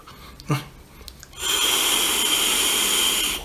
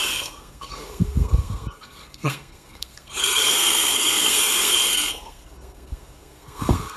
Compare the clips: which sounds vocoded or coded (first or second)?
second